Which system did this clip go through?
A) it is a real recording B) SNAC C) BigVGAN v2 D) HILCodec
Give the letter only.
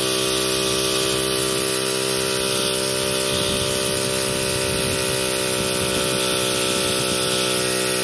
A